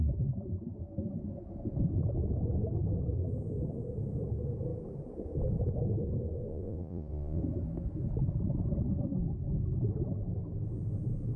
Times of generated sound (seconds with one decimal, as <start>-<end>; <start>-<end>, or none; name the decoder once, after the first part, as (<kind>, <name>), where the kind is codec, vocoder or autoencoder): 6.5-7.4 (vocoder, Vocos)